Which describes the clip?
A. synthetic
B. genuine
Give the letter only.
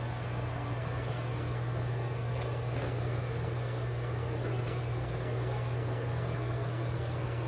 A